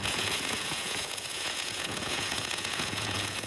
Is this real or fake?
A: fake